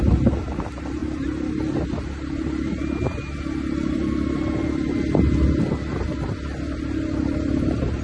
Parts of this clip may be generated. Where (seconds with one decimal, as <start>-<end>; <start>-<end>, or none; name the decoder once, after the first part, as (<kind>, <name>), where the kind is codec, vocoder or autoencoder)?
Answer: none